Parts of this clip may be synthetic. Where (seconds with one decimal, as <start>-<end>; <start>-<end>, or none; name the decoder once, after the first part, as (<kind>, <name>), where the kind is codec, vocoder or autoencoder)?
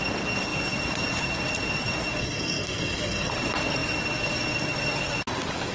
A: 2.2-3.3 (codec, SNAC)